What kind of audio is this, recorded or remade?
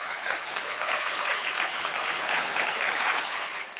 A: remade